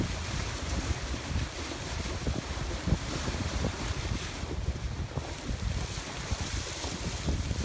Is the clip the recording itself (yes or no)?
no